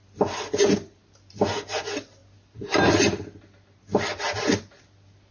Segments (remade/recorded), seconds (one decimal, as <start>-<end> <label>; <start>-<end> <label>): 0.0-5.3 recorded